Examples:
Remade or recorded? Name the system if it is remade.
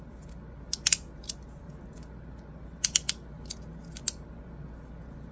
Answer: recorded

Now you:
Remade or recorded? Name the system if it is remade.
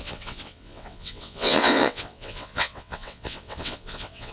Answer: remade, vocoder, WaveNeXt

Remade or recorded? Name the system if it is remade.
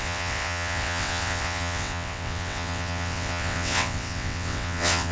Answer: remade, vocoder, WaveNeXt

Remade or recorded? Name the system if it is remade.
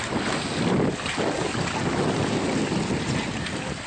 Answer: recorded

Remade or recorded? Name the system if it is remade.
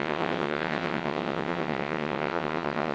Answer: remade, vocoder, WaveNeXt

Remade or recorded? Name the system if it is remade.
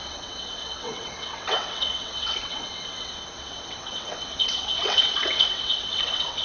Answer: remade, vocoder, WaveNeXt